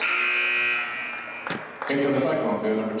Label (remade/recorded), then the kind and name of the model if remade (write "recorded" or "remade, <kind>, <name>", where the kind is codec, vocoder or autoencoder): recorded